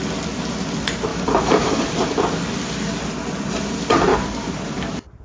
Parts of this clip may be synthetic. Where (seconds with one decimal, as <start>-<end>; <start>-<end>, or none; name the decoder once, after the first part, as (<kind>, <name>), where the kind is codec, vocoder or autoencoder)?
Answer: 1.1-2.1 (vocoder, BigVGAN v2); 4.1-5.2